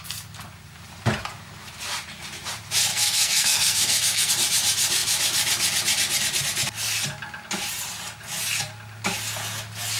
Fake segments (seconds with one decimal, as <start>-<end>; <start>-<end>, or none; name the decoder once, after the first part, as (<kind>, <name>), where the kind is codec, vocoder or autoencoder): 2.9-4.3 (codec, SNAC)